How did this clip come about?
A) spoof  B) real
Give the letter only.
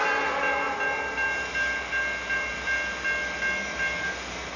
B